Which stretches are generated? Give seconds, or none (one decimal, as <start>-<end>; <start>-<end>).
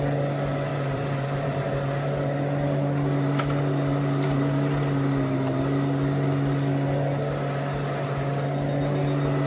0.7-1.7